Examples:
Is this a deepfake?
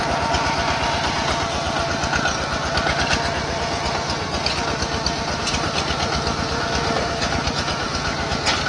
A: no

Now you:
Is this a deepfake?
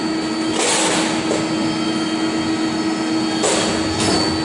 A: no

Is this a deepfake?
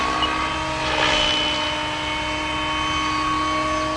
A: no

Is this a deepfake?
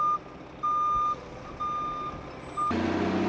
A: no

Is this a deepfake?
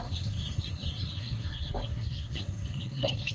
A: yes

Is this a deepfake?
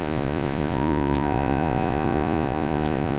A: yes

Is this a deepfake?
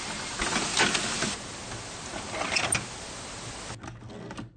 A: no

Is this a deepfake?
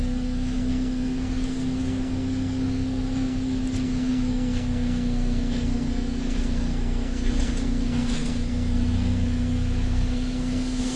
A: yes